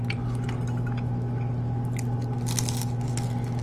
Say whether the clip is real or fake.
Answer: real